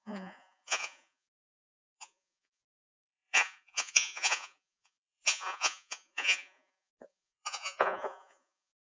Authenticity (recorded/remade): remade